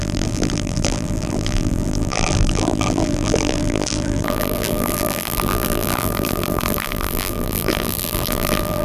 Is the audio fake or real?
fake